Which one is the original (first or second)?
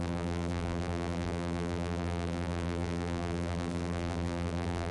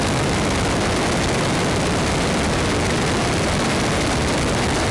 second